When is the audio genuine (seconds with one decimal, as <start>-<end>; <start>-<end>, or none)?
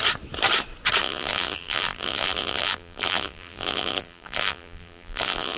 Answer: 0.0-1.0